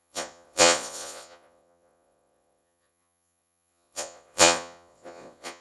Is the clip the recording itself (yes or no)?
no